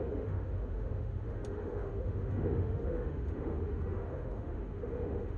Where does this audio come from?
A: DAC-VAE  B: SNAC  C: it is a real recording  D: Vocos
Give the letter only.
A